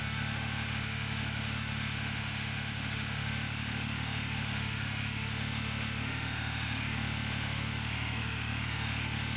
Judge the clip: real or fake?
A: fake